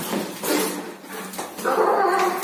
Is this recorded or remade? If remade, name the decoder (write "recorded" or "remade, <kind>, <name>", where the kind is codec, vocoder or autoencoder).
recorded